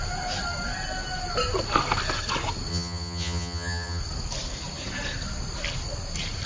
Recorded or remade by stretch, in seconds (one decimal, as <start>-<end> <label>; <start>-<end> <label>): 0.0-2.7 recorded; 2.7-4.0 remade; 4.0-6.5 recorded